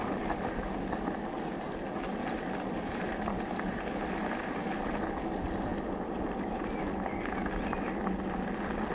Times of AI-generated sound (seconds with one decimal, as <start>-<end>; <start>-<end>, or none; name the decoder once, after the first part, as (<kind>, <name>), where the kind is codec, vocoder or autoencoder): none